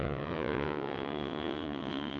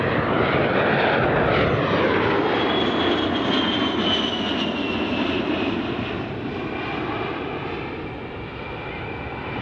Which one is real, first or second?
second